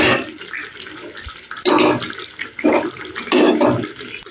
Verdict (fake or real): real